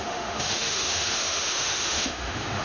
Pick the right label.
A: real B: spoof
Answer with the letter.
B